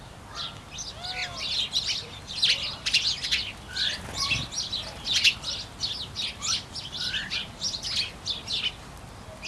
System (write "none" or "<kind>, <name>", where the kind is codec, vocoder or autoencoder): none